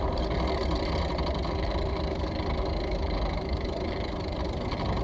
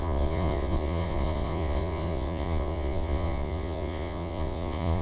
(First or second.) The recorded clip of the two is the first